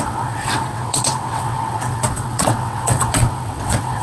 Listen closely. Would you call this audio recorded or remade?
remade